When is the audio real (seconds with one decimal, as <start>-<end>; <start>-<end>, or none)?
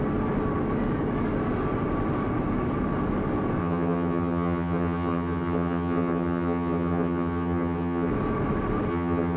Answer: 0.0-3.6; 8.1-8.9